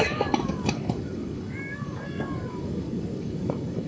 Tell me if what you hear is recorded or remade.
remade